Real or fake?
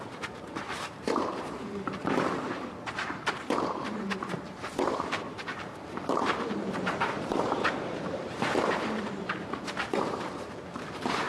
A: fake